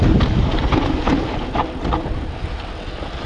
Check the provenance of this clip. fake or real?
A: real